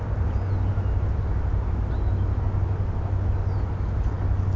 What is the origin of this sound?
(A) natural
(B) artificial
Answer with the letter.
A